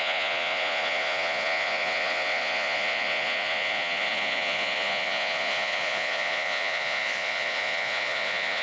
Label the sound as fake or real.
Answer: fake